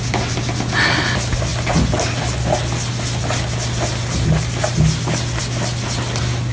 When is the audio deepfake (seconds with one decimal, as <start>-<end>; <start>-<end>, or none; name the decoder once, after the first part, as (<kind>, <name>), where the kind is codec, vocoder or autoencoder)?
none